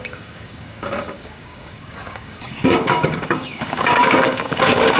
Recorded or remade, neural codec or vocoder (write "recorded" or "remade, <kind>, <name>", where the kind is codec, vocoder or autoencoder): remade, codec, DAC